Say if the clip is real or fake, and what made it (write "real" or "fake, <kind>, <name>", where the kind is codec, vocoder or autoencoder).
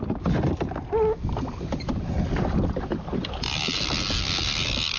real